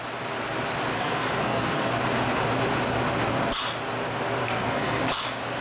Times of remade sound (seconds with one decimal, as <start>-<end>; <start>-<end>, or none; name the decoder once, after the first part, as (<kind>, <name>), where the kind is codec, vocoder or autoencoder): 0.9-1.9 (codec, SNAC); 4.4-5.0